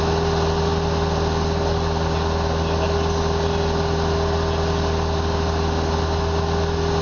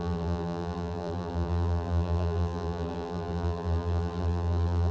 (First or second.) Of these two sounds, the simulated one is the second